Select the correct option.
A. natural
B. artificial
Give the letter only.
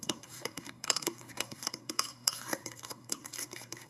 B